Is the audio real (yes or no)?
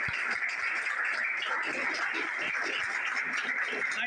yes